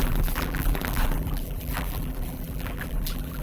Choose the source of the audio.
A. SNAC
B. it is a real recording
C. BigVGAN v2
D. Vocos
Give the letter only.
C